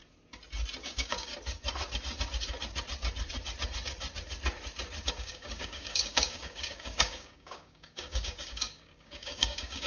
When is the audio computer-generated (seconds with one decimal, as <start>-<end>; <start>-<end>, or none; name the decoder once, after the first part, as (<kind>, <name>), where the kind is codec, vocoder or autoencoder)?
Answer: 0.8-1.3 (codec, DAC); 5.1-9.9